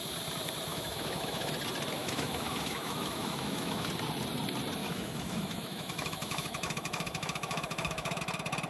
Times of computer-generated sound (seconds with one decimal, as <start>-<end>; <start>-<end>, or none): 0.7-1.5; 2.0-3.9; 4.8-8.2